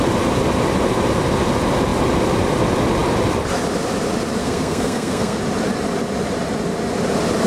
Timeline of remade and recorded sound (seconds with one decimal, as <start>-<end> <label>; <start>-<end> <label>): 0.0-4.4 recorded; 4.4-5.4 remade; 5.4-7.5 recorded